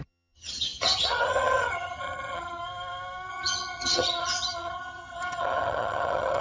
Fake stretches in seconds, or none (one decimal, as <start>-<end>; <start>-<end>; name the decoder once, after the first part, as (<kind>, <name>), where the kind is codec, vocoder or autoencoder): 0.0-2.6 (vocoder, HiFi-GAN); 3.3-6.4